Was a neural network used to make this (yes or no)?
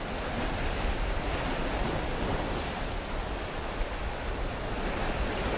no